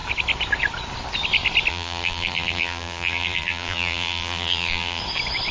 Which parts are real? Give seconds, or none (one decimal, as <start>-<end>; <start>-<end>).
0.0-1.7; 5.0-5.5